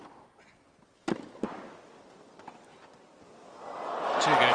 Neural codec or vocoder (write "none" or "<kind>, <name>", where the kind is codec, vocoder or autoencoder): none